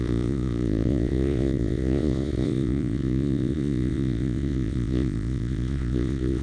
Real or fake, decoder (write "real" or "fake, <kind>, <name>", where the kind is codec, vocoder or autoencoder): fake, vocoder, Vocos